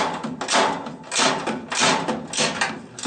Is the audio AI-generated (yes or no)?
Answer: no